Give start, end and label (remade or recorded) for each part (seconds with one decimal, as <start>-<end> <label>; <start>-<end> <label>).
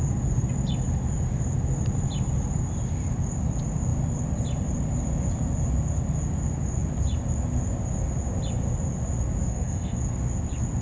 0.0-9.5 recorded; 9.5-10.0 remade; 10.0-10.8 recorded